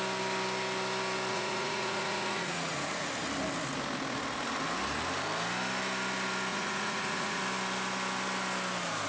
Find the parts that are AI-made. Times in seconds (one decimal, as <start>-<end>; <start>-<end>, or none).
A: 1.3-3.1; 6.5-7.4